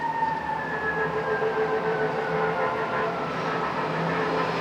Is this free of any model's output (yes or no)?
no